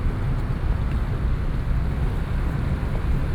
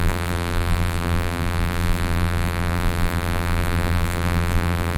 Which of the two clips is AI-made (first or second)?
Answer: second